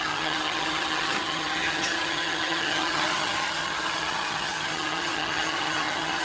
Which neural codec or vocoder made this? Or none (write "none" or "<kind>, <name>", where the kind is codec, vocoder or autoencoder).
vocoder, HiFi-GAN